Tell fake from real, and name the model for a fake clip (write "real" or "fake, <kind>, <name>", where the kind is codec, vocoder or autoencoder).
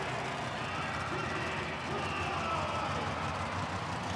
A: real